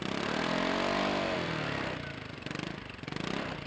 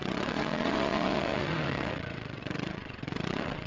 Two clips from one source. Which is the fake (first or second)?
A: second